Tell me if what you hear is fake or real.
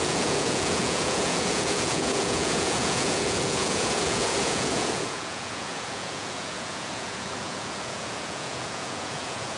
fake